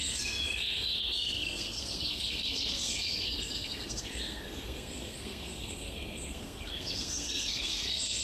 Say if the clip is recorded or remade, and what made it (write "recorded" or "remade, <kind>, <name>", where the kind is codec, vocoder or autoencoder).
remade, codec, SNAC